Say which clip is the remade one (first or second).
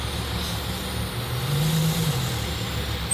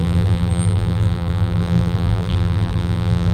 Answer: second